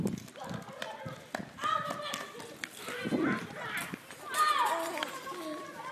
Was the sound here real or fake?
real